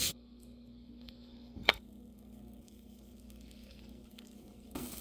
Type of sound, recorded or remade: remade